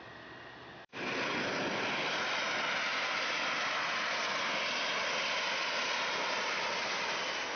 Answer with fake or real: real